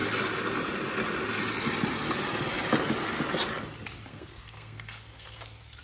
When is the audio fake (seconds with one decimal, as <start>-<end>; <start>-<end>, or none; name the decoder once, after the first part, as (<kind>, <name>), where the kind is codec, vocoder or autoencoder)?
4.1-5.8 (codec, SNAC)